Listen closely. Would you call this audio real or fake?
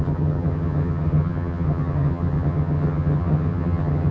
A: fake